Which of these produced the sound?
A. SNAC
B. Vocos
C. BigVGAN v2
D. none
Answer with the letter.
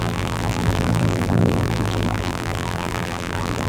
C